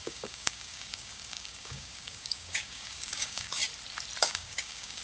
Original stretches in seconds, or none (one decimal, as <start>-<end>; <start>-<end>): 3.6-4.2